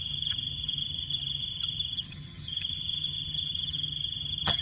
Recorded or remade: remade